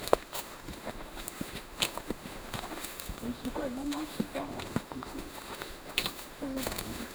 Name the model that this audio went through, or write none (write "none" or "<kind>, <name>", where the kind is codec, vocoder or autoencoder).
autoencoder, DAC-VAE